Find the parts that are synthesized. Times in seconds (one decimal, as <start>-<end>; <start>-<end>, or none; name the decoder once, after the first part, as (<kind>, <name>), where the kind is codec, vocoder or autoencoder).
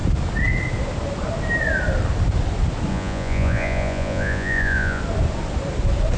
2.9-5.0 (vocoder, Vocos)